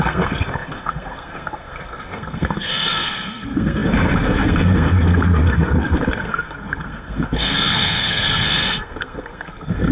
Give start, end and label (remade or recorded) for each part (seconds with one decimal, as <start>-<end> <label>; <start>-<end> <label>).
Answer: 0.0-9.9 remade